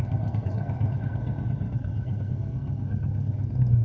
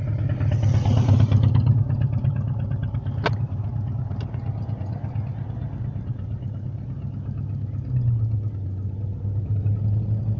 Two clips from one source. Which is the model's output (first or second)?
first